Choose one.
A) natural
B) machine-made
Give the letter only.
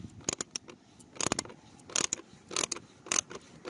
A